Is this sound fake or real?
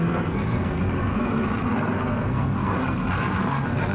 fake